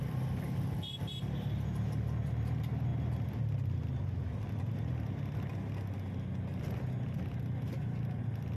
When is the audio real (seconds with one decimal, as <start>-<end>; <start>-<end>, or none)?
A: 0.0-8.6